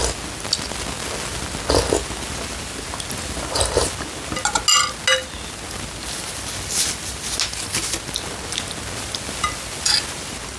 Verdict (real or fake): real